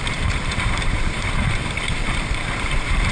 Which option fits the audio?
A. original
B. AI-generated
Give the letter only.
B